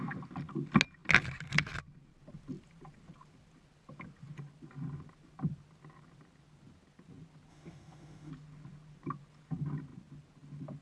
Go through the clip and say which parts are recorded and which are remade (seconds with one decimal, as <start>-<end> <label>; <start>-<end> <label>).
0.0-7.5 recorded; 7.5-8.3 remade; 8.3-10.8 recorded